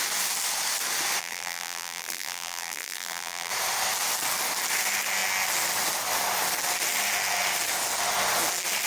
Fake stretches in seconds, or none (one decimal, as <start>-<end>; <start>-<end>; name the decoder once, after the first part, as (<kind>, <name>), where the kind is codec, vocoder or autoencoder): 1.2-3.5 (vocoder, BigVGAN v2)